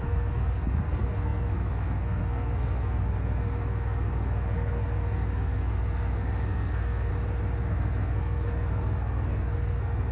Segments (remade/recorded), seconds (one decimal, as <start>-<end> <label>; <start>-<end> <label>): 0.0-7.1 remade; 7.1-7.6 recorded; 7.6-10.1 remade